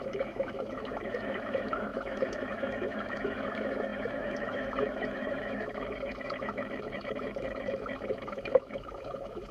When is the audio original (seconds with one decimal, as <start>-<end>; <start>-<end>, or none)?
none